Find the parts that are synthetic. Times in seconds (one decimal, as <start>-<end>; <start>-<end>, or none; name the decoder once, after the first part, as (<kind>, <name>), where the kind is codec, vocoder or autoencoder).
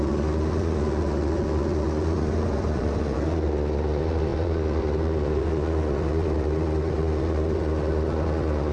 0.0-8.7 (vocoder, Vocos)